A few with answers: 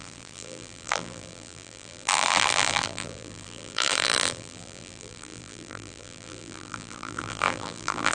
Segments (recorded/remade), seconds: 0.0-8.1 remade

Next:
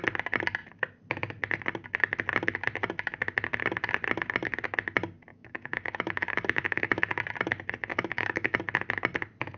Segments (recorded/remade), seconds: 0.0-5.3 recorded; 5.3-7.1 remade; 7.1-7.9 recorded; 7.9-8.6 remade; 8.6-9.6 recorded